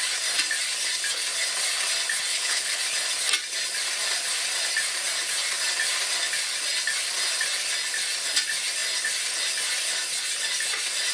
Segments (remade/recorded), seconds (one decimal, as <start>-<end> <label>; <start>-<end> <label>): 0.0-2.3 recorded; 2.3-2.8 remade; 2.8-11.1 recorded